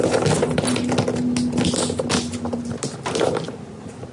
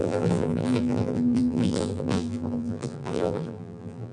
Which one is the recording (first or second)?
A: first